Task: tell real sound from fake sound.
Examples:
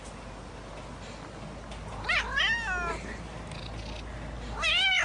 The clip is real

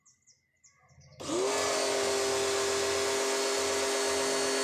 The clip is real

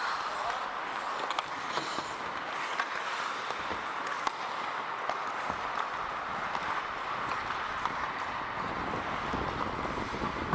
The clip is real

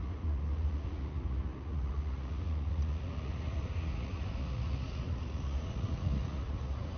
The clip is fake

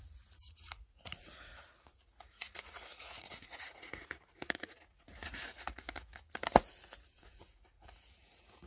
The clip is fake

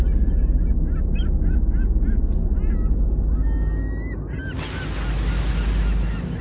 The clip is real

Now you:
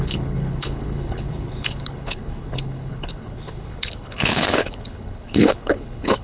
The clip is fake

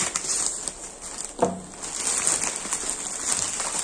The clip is real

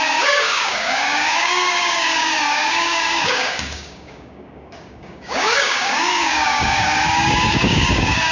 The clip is fake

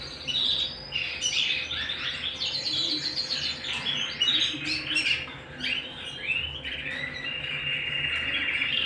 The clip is real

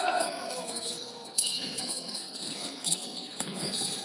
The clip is fake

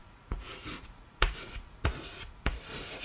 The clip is fake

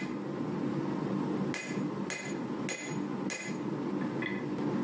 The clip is real